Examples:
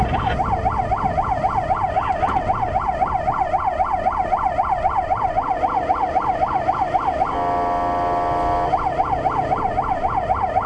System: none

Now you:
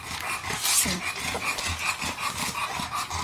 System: none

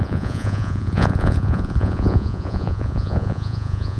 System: vocoder, Vocos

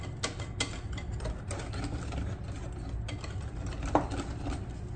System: none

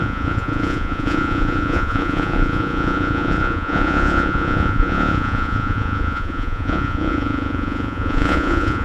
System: vocoder, Vocos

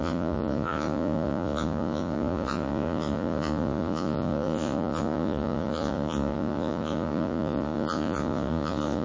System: vocoder, Vocos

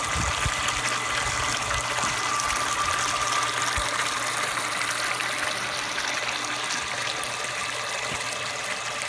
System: none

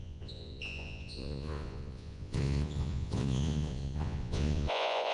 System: vocoder, Vocos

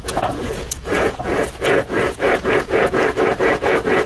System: vocoder, Vocos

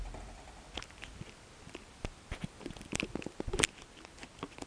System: none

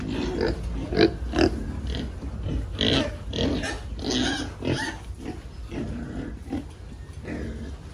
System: none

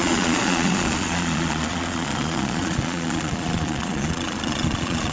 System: vocoder, Vocos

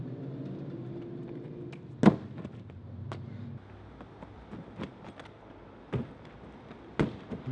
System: none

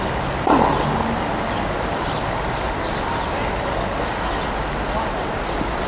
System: none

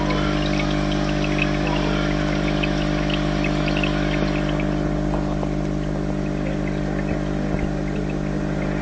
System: none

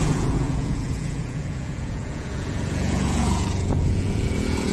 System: vocoder, Vocos